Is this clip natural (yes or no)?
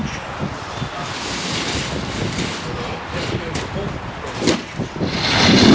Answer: yes